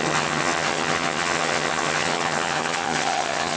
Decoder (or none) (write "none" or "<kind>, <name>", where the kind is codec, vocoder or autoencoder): vocoder, HiFi-GAN